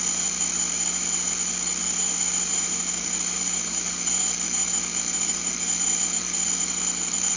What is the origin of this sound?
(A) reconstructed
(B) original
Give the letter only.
B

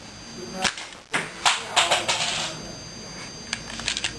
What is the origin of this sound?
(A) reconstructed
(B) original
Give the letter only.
B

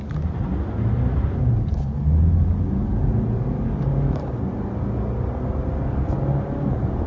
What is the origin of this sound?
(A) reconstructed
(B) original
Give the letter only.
B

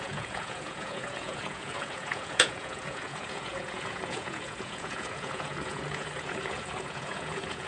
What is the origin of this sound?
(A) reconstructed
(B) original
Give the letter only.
A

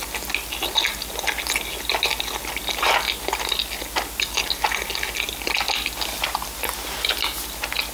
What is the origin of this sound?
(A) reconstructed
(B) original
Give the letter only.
B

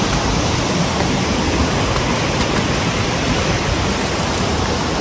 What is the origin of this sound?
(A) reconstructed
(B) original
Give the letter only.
B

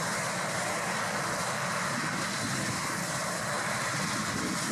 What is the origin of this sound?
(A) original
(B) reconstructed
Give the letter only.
A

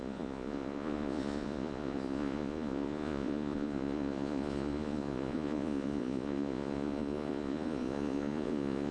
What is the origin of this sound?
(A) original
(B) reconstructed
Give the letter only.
B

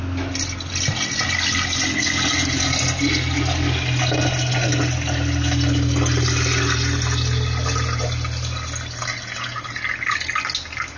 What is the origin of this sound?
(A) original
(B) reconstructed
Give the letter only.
A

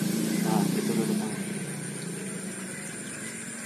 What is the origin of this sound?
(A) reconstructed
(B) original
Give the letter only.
B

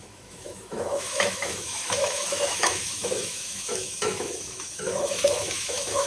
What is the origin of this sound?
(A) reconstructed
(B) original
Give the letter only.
A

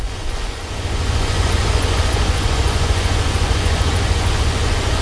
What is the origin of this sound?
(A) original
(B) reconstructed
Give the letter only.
B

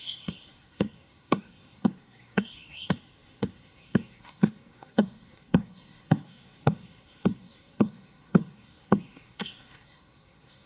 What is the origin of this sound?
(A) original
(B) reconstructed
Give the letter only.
B